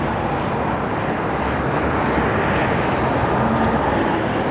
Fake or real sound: real